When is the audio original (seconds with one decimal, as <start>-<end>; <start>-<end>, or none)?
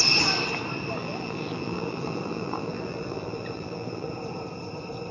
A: 0.0-1.0; 4.1-5.1